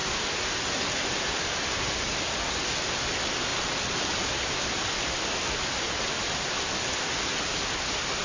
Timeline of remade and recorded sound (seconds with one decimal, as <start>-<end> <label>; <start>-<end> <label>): 0.0-8.2 recorded

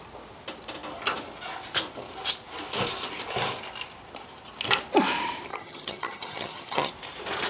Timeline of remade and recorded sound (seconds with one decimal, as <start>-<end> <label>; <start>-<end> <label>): 0.0-5.5 recorded; 5.5-6.9 remade; 6.9-7.5 recorded

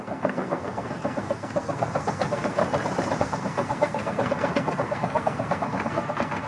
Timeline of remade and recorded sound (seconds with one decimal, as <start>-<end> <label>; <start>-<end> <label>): 0.0-2.6 remade; 2.6-3.2 recorded; 3.2-6.5 remade

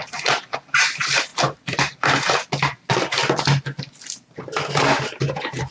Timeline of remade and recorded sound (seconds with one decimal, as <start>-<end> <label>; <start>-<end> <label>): 0.0-5.7 recorded

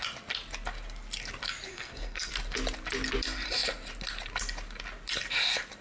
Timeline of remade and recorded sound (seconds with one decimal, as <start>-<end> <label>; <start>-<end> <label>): 0.0-1.7 recorded; 1.7-2.3 remade; 2.3-5.8 recorded

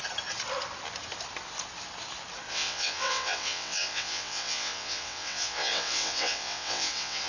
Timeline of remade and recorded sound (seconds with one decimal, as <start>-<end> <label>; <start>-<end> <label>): 0.0-2.5 recorded; 2.5-7.3 remade